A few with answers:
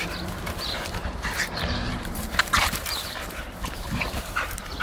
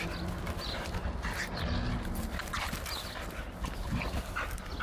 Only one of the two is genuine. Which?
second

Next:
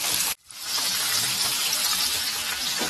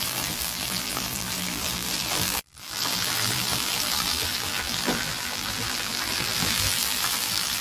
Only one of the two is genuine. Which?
first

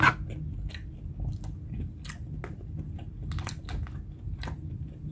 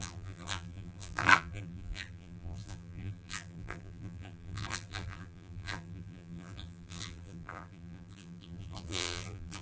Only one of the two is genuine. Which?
first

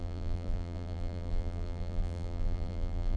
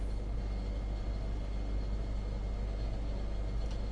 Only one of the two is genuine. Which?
second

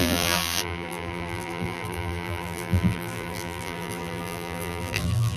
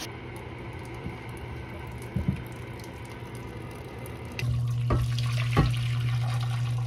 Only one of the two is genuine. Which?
second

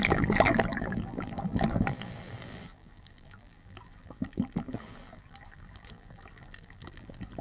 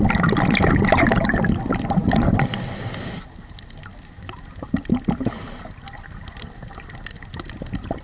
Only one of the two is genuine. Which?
second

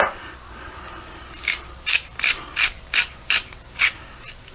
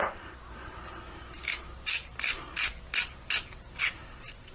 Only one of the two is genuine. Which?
second